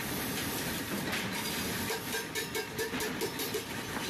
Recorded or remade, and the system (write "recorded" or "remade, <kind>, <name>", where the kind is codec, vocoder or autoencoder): recorded